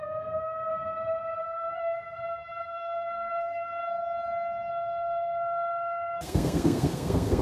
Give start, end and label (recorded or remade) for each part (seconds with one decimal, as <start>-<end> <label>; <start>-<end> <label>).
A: 0.0-0.7 remade; 0.7-1.4 recorded; 1.4-3.8 remade; 3.8-4.7 recorded; 4.7-7.4 remade